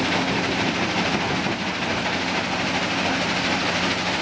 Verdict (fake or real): real